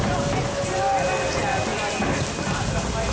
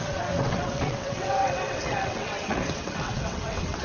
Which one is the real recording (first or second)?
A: first